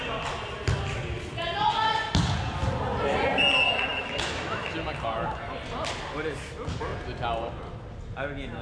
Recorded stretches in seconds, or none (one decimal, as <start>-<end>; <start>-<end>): 0.0-3.9; 4.7-8.6